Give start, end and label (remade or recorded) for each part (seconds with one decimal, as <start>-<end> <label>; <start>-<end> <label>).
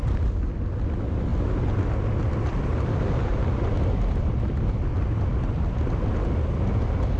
0.0-7.2 recorded